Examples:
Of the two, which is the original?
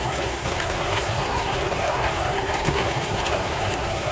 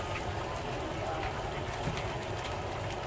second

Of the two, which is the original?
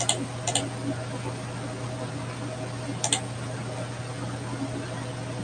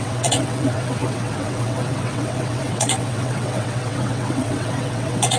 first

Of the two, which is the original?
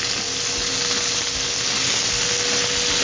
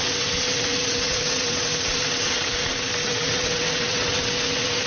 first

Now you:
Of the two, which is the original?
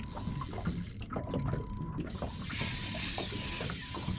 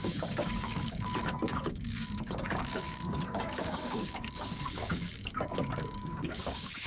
first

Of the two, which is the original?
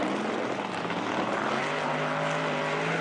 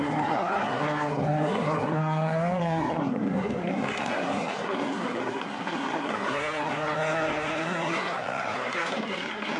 first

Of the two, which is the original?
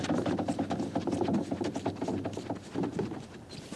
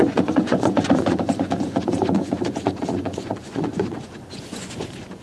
first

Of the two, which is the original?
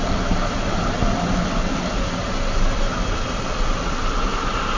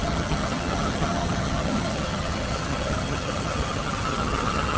first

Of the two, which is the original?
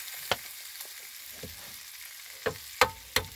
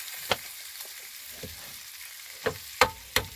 first